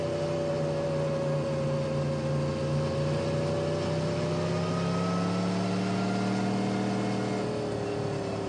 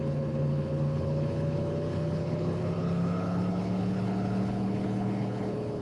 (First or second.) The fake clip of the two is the second